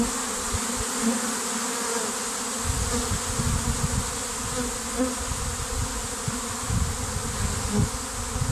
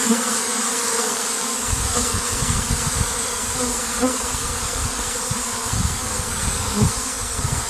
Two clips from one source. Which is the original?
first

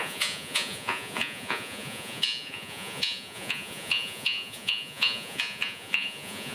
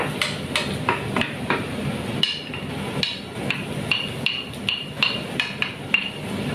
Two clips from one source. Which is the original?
second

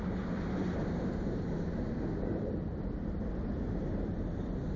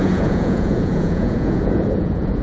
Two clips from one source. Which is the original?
first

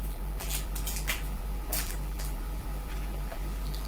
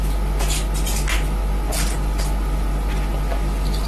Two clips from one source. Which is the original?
second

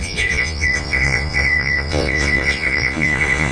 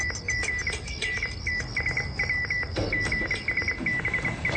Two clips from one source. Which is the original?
second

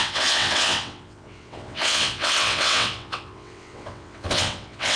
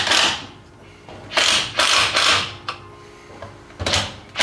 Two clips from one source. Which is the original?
second